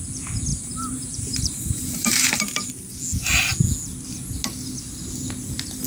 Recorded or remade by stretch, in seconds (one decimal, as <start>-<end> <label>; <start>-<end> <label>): 0.0-0.5 recorded; 0.5-2.7 remade; 2.7-5.9 recorded